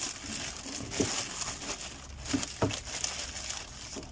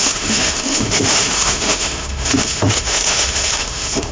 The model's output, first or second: second